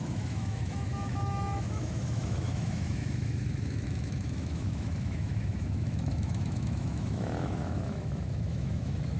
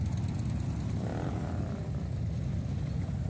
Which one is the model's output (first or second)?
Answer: first